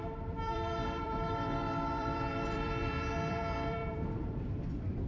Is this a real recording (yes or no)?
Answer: no